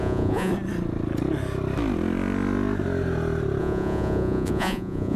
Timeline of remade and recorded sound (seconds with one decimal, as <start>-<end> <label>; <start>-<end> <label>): 0.0-0.5 remade; 0.5-3.6 recorded; 3.6-5.2 remade